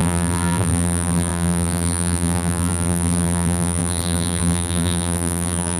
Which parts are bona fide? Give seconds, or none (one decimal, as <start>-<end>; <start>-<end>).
none